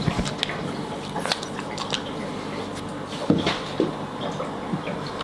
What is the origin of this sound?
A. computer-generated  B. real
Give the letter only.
B